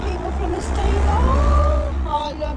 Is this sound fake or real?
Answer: fake